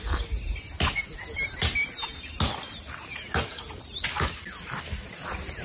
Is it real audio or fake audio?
real